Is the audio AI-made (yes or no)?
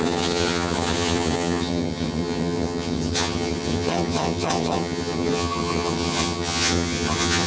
yes